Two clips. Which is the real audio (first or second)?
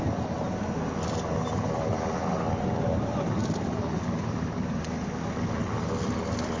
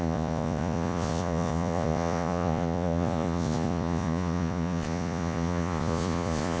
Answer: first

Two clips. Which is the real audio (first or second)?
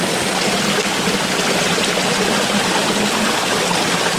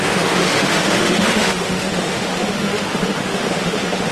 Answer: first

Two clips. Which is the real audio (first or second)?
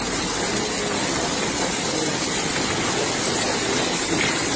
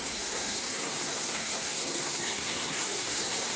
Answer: first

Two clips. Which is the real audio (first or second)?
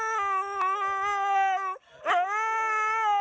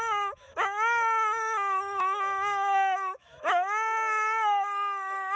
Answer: first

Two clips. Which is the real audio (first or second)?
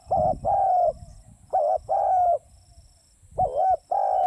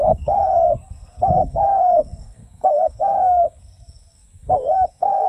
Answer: first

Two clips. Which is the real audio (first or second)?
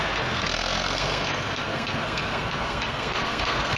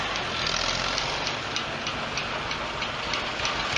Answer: second